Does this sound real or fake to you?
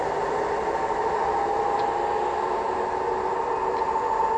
real